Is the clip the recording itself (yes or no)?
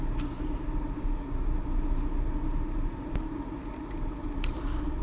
no